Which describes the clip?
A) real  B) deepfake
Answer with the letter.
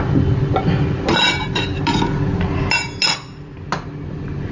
A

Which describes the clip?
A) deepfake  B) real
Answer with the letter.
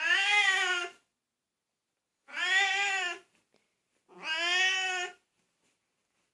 B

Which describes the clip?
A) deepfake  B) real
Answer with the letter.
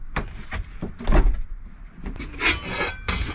B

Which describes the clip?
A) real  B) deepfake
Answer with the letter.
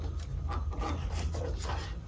A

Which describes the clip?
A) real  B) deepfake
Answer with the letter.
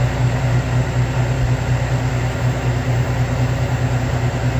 A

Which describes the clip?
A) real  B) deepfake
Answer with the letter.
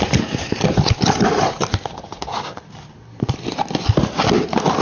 A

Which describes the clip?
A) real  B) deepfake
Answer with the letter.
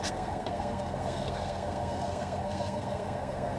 B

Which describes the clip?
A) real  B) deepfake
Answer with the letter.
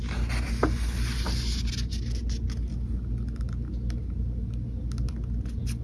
A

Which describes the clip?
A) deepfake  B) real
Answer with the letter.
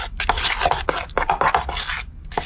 B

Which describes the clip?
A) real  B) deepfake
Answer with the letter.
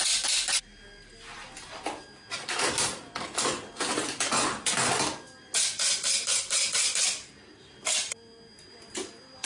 A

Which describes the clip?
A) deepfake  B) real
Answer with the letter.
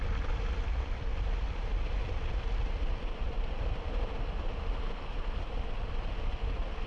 B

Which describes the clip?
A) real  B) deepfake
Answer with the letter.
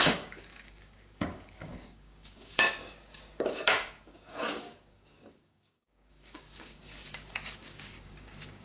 B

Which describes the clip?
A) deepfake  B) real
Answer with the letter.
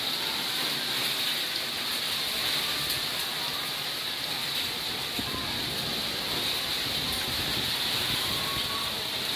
B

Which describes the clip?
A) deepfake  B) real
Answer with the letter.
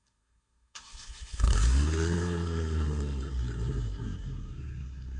A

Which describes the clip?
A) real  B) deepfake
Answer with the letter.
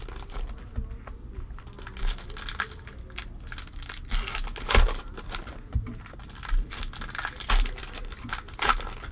A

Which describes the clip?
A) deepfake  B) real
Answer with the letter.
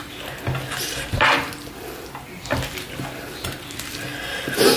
B